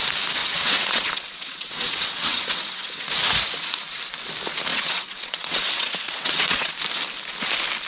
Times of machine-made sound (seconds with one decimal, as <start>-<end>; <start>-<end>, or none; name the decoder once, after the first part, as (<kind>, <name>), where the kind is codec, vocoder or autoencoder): 0.4-3.1 (vocoder, WaveNeXt); 4.7-6.7